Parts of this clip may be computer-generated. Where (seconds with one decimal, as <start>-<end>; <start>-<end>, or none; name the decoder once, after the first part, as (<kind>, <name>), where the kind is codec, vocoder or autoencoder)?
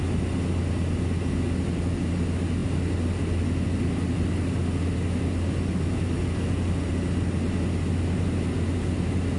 none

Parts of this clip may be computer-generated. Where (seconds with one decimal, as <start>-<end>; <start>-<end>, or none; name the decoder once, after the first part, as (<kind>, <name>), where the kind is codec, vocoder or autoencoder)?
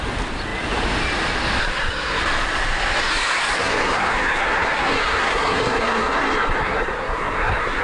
1.6-2.2 (codec, SNAC); 3.0-7.8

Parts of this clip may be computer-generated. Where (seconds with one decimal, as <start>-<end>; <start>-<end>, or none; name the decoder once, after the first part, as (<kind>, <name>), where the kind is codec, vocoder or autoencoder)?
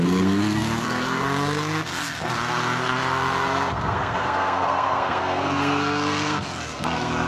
0.0-7.3 (codec, SNAC)